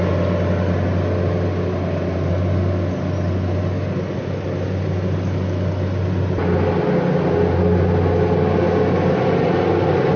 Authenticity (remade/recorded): recorded